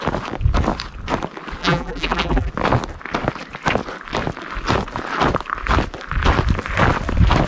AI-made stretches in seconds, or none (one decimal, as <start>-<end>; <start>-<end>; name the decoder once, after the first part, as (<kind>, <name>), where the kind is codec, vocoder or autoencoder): 1.6-2.5 (vocoder, BigVGAN v2)